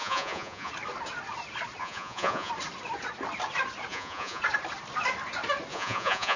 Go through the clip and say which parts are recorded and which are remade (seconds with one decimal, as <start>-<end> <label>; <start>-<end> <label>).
0.0-0.7 remade; 0.7-1.8 recorded; 1.8-2.5 remade; 2.5-3.9 recorded; 3.9-4.4 remade; 4.4-5.7 recorded; 5.7-6.4 remade